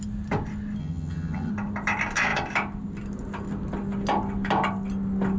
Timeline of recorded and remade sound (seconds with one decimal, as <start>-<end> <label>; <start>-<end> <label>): 0.0-0.8 recorded; 0.8-1.5 remade; 1.5-5.4 recorded